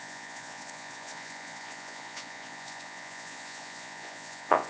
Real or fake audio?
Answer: fake